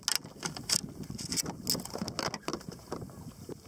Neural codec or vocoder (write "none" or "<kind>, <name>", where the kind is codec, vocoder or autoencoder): none